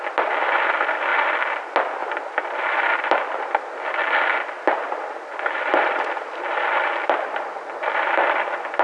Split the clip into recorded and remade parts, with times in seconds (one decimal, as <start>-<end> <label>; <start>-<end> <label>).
0.0-8.8 recorded